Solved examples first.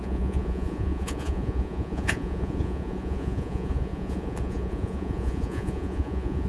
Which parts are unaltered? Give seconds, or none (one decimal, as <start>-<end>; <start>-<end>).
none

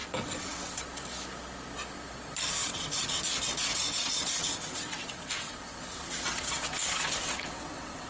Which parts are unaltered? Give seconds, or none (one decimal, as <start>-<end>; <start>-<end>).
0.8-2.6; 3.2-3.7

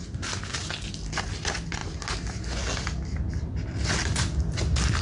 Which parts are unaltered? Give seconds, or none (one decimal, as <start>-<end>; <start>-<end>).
0.0-5.0

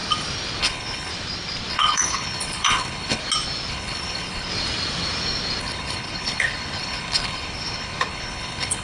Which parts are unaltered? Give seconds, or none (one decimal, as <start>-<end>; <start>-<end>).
0.0-0.6; 1.1-1.7; 3.2-3.7; 4.5-5.6

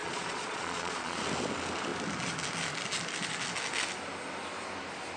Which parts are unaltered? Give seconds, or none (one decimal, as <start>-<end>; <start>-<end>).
1.2-5.2